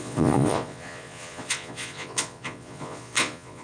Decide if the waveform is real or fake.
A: fake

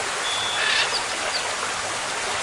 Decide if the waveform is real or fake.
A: real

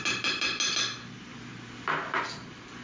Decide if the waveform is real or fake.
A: real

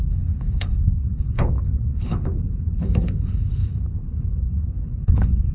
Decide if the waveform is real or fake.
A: fake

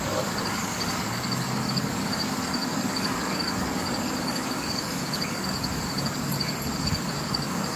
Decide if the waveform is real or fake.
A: fake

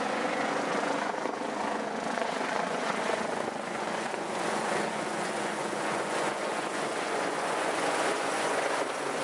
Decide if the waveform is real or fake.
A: fake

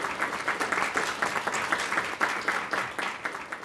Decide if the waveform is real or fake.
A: real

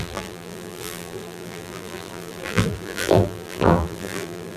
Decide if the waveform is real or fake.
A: fake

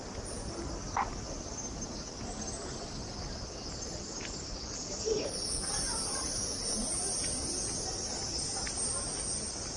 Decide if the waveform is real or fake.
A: real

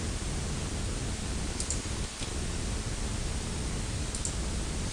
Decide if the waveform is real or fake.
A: real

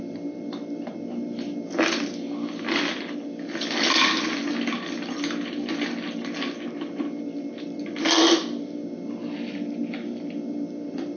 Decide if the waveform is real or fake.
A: real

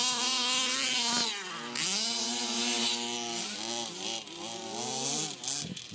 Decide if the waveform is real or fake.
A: real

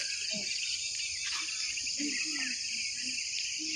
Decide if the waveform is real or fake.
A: real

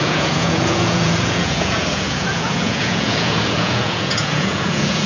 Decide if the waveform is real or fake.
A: fake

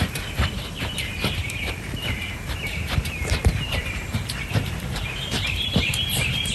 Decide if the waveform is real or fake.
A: fake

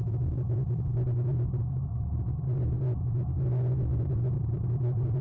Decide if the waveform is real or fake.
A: fake